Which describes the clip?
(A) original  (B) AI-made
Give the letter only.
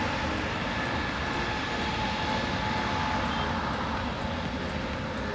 A